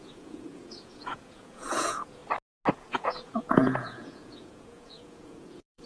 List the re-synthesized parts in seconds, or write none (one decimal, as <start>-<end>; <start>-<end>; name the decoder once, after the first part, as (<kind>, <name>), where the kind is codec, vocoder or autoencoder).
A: 0.0-2.2 (vocoder, Vocos); 2.8-5.9